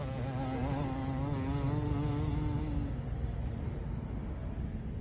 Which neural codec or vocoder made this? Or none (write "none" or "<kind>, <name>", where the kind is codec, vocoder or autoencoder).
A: none